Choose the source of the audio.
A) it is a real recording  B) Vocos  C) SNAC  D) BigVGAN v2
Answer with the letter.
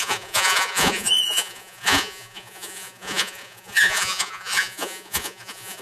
B